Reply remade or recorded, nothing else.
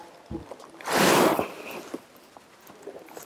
recorded